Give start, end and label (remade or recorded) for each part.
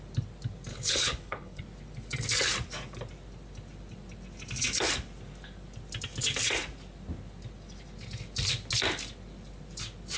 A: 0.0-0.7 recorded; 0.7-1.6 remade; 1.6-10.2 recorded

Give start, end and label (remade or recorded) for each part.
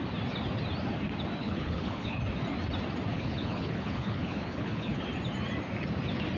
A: 0.0-1.4 recorded; 1.4-2.2 remade; 2.2-3.1 recorded; 3.1-5.0 remade; 5.0-6.4 recorded